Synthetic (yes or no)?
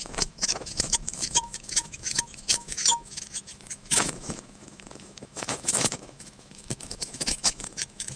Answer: yes